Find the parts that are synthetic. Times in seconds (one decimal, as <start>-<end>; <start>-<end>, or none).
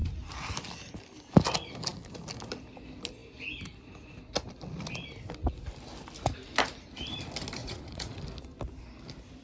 7.6-8.2